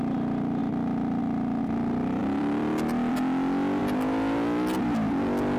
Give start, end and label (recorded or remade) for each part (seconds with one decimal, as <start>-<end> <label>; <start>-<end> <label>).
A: 0.0-3.8 remade; 3.8-5.6 recorded